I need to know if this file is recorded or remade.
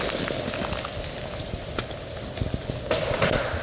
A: recorded